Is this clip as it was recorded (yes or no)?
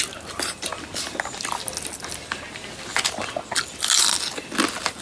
yes